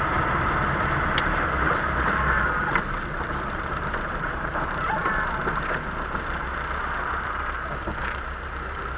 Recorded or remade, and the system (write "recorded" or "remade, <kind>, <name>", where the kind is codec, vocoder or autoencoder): remade, vocoder, BigVGAN v2